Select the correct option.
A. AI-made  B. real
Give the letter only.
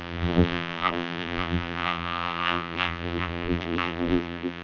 A